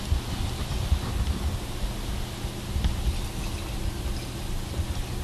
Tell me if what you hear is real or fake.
real